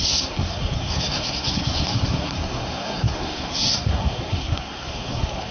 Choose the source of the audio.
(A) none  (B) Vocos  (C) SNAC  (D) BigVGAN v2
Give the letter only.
C